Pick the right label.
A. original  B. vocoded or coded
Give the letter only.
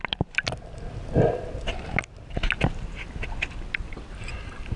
A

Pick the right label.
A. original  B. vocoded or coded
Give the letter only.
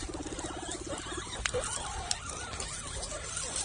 A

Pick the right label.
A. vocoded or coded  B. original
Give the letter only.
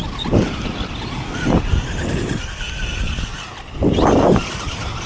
B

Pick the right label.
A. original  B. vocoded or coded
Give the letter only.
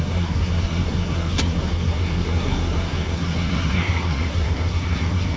B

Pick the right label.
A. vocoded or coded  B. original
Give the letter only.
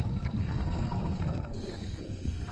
A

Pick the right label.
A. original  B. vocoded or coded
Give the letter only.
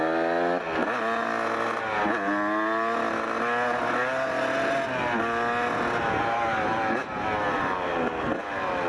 A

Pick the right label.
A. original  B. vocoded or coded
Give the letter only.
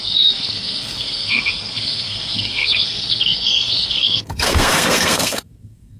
B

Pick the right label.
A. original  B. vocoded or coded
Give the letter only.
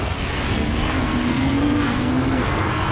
B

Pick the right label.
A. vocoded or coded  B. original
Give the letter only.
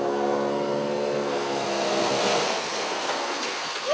A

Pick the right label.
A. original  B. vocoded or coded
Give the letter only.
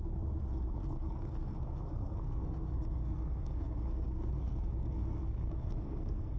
B